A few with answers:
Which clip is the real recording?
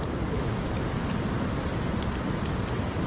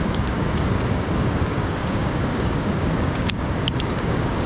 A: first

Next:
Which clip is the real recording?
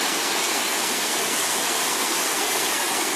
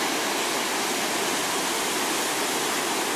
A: second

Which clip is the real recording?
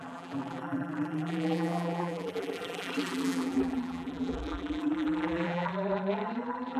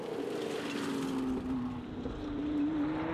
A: second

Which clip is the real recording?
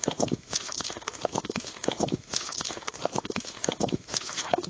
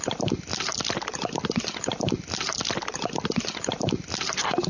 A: second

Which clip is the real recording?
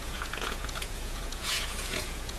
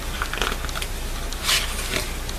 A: second